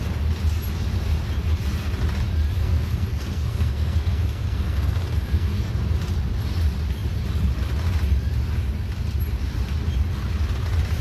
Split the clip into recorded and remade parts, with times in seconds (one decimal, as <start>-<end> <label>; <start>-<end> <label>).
0.0-2.6 recorded; 2.6-5.7 remade; 5.7-11.0 recorded